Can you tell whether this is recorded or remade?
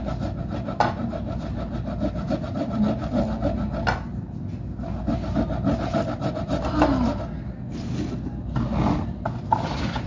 recorded